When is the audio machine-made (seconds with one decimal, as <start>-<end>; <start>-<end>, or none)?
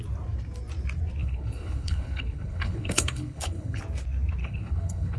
1.2-3.8; 4.4-5.2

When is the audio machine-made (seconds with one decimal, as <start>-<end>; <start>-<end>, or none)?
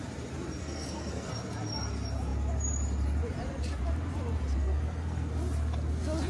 0.6-1.3; 4.6-5.3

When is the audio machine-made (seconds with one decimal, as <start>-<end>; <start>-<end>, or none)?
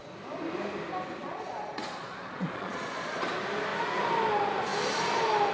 1.2-3.3